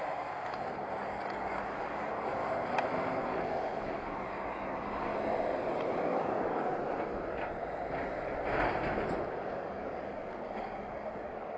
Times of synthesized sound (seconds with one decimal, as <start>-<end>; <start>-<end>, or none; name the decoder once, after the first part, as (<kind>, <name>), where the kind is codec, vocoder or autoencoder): 1.0-2.4 (codec, DAC); 3.3-5.1; 5.9-6.7; 9.3-11.6